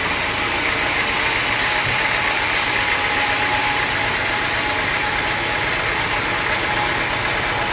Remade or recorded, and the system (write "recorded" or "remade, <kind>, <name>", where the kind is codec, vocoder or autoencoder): recorded